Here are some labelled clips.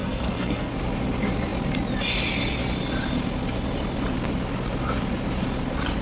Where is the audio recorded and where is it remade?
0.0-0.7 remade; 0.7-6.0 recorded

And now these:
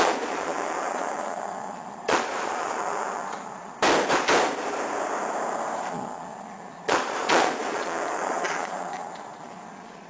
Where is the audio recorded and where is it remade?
0.0-3.8 remade; 3.8-5.9 recorded; 5.9-10.1 remade

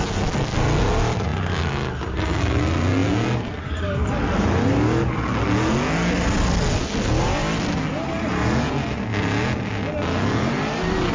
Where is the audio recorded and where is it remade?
0.0-11.1 recorded